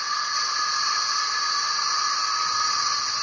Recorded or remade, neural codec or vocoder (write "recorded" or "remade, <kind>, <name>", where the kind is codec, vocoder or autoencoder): recorded